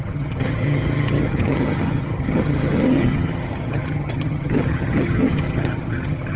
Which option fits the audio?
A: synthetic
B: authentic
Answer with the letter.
A